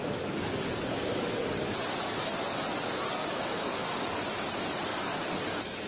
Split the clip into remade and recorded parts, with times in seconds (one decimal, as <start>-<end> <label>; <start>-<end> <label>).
0.0-1.7 remade; 1.7-3.2 recorded; 3.2-4.2 remade; 4.2-4.9 recorded; 4.9-5.9 remade

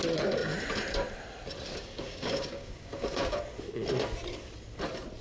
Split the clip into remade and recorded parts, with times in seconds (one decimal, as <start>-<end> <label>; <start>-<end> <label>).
0.0-1.7 recorded; 1.7-3.4 remade; 3.4-5.2 recorded

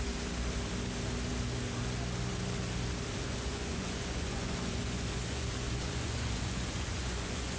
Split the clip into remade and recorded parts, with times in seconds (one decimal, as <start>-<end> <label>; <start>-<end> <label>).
0.0-3.2 recorded; 3.2-7.6 remade

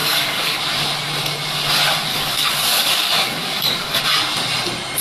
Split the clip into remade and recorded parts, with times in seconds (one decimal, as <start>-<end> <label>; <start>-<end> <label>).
0.0-0.6 remade; 0.6-2.1 recorded; 2.1-4.0 remade; 4.0-5.0 recorded

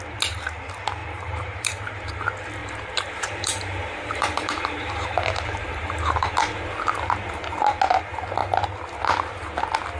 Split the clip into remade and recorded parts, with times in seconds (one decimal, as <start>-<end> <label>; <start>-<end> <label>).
0.0-1.0 recorded; 1.0-2.1 remade; 2.1-2.6 recorded; 2.6-6.3 remade; 6.3-10.0 recorded

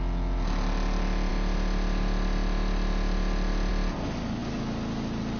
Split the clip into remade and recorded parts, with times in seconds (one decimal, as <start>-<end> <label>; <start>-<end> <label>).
0.0-5.4 recorded

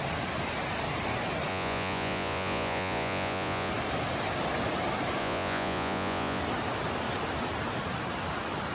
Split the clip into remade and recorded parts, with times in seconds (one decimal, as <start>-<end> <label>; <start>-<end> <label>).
0.0-1.5 recorded; 1.5-3.7 remade; 3.7-5.2 recorded; 5.2-6.4 remade; 6.4-8.7 recorded

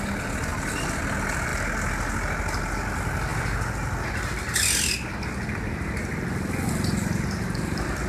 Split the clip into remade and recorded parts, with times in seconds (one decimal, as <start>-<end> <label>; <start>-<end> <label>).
0.0-8.1 recorded